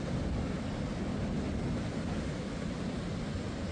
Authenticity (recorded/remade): recorded